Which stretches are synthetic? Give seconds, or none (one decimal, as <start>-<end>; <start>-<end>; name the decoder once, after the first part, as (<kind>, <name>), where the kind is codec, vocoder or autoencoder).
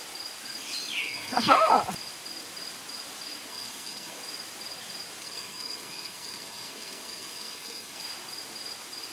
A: 1.0-1.8 (codec, SNAC); 3.5-4.2; 5.2-8.0